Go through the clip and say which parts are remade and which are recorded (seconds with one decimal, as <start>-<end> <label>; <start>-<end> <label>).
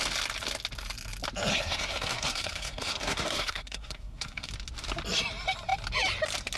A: 0.0-1.5 recorded; 1.5-4.5 remade; 4.5-6.6 recorded